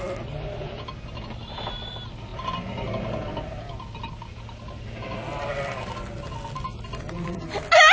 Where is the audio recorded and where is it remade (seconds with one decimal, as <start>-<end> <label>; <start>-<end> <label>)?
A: 0.0-7.9 recorded